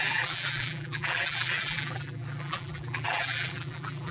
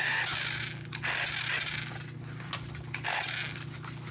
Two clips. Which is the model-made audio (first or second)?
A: first